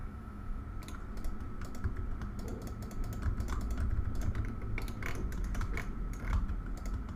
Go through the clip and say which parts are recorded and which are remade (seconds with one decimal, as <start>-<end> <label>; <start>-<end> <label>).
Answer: 0.0-0.6 remade; 0.6-7.2 recorded